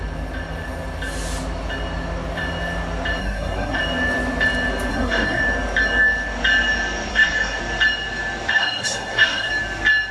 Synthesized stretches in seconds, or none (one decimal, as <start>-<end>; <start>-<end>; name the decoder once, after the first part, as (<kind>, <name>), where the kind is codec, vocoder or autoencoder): 3.2-3.8 (codec, SNAC); 4.9-5.4; 7.1-7.6; 8.5-9.5